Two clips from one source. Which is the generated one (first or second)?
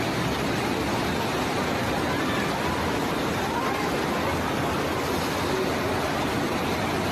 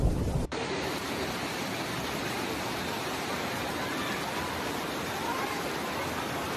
second